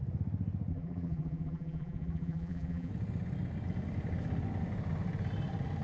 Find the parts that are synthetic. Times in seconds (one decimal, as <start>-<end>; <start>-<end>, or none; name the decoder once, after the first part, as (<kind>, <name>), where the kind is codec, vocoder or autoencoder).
0.7-2.9 (vocoder, BigVGAN v2)